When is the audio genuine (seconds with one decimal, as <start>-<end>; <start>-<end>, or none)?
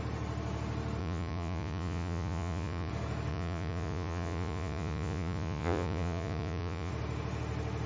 0.0-1.0; 2.9-3.3; 6.9-7.9